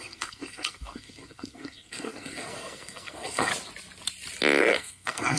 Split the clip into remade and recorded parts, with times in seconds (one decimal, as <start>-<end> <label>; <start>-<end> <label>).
0.0-3.5 remade; 3.5-4.6 recorded; 4.6-5.4 remade